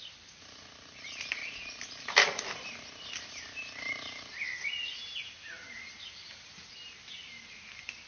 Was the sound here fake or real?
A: real